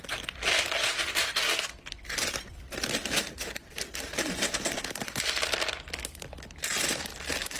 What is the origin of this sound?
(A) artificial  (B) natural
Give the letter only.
B